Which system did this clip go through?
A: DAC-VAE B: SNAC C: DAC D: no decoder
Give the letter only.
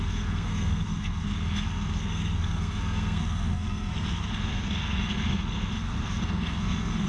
B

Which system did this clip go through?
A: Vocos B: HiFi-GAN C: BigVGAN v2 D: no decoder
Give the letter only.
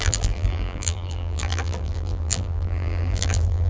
C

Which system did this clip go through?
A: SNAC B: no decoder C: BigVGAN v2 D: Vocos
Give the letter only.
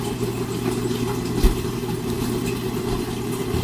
B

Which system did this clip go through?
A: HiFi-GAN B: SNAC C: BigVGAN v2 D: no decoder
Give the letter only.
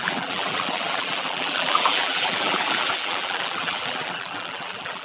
C